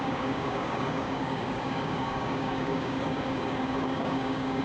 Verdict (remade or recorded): remade